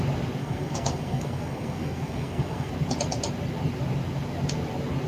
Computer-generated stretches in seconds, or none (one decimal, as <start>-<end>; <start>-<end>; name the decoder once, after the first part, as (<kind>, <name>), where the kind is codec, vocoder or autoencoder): 0.4-2.7 (codec, SNAC)